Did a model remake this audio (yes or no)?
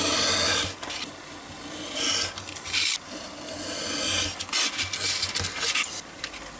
no